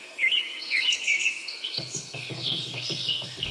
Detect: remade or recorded remade